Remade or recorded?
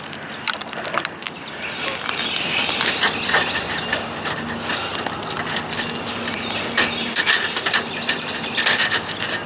recorded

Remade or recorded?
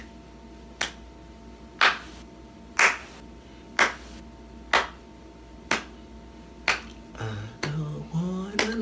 recorded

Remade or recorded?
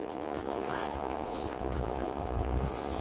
remade